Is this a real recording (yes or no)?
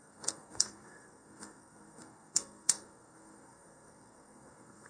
no